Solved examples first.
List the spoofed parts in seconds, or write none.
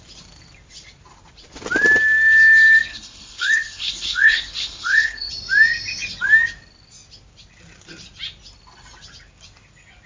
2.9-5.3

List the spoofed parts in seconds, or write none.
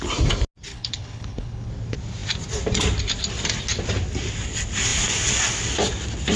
0.7-1.7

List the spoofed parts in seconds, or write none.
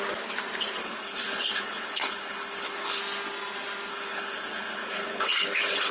0.8-3.0; 3.9-5.9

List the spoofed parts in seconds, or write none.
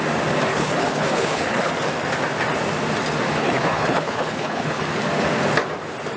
0.5-1.7; 3.4-4.8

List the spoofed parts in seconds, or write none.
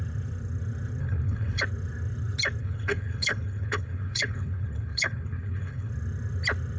1.0-1.6; 2.6-5.9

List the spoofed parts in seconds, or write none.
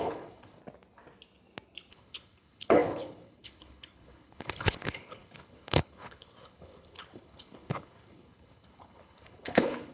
0.0-0.6; 1.9-9.9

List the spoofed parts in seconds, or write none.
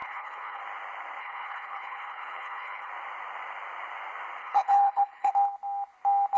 0.0-0.6; 1.2-2.9; 4.4-5.3